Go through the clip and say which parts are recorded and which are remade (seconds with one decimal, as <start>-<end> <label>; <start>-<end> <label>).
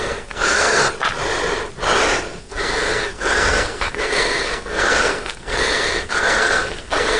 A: 0.0-0.8 remade; 0.8-2.4 recorded; 2.4-7.2 remade